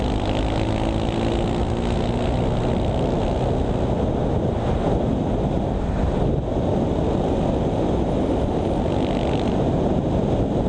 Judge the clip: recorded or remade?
recorded